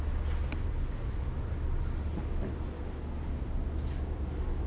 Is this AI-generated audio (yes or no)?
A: no